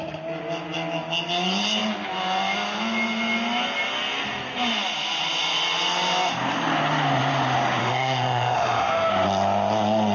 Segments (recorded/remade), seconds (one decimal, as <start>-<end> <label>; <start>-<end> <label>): 0.0-7.8 recorded; 7.8-9.1 remade; 9.1-10.1 recorded

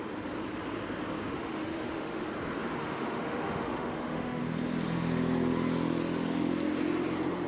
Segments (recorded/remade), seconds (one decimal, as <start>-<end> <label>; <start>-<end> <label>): 0.0-1.3 recorded; 1.3-2.3 remade; 2.3-2.8 recorded; 2.8-4.4 remade; 4.4-7.5 recorded

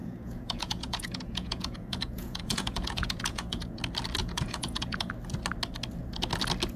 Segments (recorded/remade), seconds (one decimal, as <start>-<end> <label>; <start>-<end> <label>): 0.0-3.8 remade; 3.8-4.2 recorded; 4.2-5.1 remade; 5.1-6.8 recorded

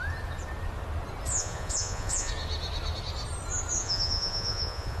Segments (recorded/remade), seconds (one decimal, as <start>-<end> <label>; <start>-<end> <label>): 0.0-1.3 recorded; 1.3-2.3 remade; 2.3-3.8 recorded; 3.8-5.0 remade